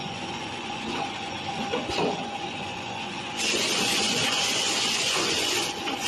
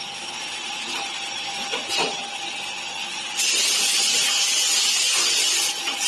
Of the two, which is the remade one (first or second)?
first